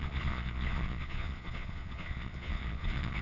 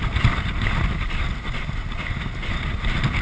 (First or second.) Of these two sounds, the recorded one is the second